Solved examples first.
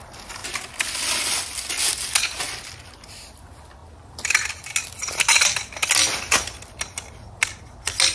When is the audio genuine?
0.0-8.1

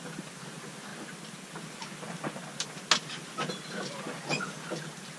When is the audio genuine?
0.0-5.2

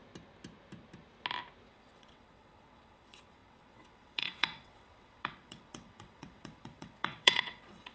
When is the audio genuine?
0.0-1.7

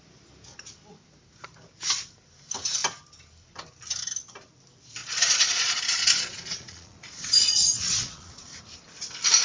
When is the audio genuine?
0.0-5.0; 8.4-9.4